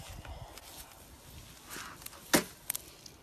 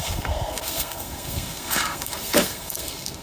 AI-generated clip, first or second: second